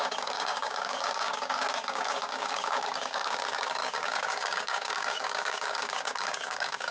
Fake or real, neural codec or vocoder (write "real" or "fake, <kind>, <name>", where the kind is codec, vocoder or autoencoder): fake, codec, DAC